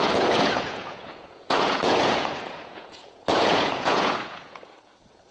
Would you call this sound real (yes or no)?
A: no